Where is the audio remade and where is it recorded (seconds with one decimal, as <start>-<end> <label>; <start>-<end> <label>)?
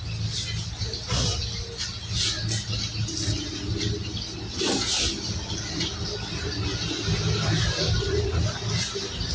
0.0-9.3 recorded